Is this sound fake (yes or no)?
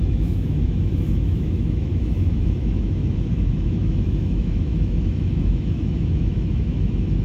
yes